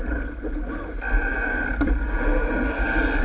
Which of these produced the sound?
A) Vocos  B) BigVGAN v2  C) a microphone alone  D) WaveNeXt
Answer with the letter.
C